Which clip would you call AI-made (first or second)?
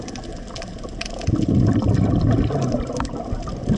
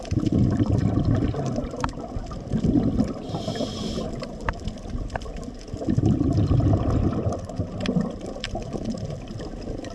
second